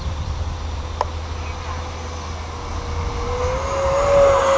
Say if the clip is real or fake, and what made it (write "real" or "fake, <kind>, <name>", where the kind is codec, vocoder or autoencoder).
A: real